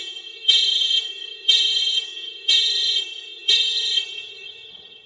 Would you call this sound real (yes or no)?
no